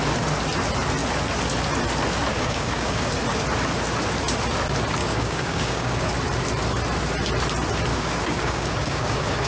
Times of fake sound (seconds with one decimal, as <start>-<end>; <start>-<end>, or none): 2.3-3.1; 5.0-6.1; 7.9-9.5